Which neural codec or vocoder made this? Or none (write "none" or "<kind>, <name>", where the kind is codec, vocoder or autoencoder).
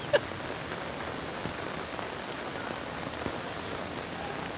none